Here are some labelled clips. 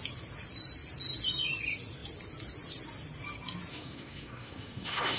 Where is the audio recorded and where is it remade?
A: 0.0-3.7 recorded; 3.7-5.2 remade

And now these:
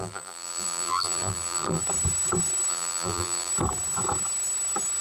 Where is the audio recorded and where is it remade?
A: 0.0-1.8 remade; 1.8-2.7 recorded; 2.7-3.5 remade; 3.5-5.0 recorded